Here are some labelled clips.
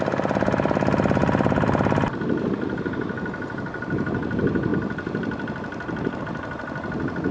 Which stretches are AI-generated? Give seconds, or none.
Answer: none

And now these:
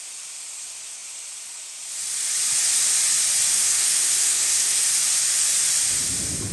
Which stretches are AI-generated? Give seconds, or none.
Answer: 3.5-4.8

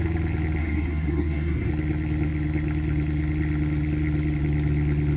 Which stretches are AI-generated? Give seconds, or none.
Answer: 0.6-1.7

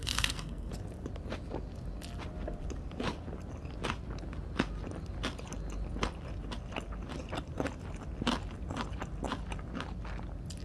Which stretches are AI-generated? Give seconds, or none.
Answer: 0.0-0.7

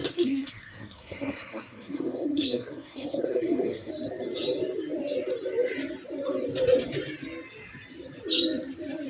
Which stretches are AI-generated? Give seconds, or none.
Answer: 0.0-3.9

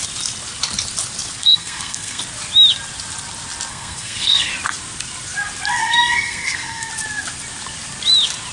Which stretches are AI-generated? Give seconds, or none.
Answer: 1.4-2.2; 3.7-4.5; 5.8-6.9